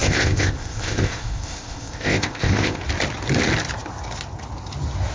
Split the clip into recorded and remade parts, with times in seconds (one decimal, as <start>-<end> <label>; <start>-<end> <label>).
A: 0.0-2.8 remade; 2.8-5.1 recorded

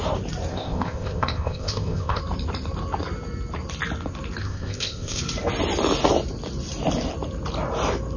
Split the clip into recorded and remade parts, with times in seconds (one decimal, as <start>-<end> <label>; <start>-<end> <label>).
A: 0.0-0.5 recorded; 0.5-2.2 remade; 2.2-4.4 recorded; 4.4-5.2 remade; 5.2-8.2 recorded

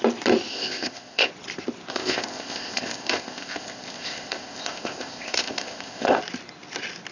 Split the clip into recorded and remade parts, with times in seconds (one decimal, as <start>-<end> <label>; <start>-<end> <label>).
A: 0.0-0.5 recorded; 0.5-1.3 remade; 1.3-1.9 recorded; 1.9-6.2 remade; 6.2-7.1 recorded